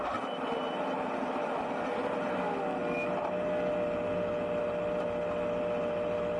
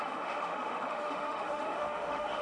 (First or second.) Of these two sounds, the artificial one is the second